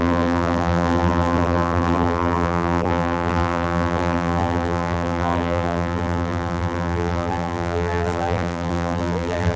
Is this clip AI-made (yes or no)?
yes